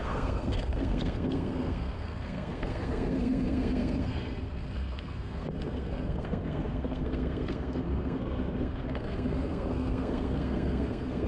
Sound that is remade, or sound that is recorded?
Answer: remade